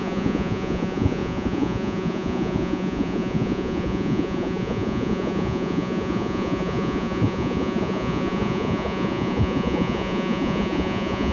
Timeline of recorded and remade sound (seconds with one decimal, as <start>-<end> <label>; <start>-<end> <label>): 0.0-11.3 remade